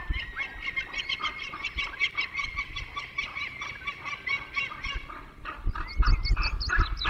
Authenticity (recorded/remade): recorded